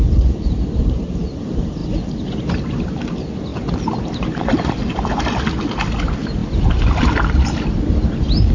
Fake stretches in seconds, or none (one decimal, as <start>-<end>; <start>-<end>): 0.0-1.8; 2.5-3.5; 4.7-8.5